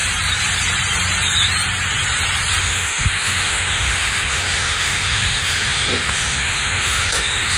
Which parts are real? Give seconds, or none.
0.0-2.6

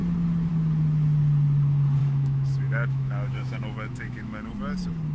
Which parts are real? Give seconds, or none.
0.0-2.0; 4.5-5.1

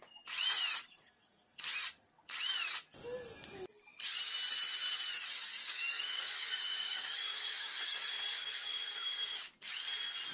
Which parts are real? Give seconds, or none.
0.0-5.6; 9.4-10.3

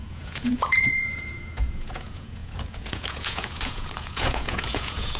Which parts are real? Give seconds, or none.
none

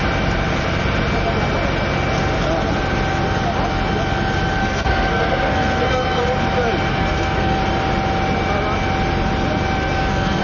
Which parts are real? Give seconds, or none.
0.0-4.6; 6.2-6.9; 7.6-9.8